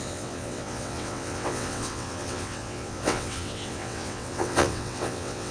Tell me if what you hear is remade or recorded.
remade